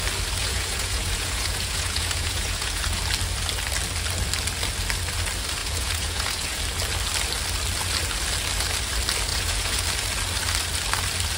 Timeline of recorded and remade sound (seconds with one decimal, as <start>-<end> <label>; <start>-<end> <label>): 0.0-0.4 recorded; 0.4-3.0 remade; 3.0-5.6 recorded; 5.6-6.6 remade; 6.6-9.3 recorded; 9.3-9.8 remade; 9.8-11.4 recorded